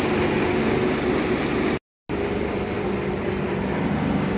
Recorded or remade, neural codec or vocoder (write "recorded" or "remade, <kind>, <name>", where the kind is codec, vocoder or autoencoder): recorded